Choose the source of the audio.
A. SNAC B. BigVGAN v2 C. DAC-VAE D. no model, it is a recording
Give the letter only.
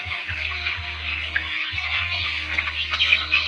A